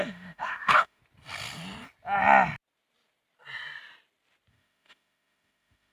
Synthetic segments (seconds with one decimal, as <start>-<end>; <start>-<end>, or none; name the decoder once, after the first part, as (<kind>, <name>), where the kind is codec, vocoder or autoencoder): 0.0-1.0 (autoencoder, DAC-VAE); 4.5-5.9